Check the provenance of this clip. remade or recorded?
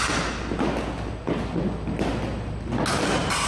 recorded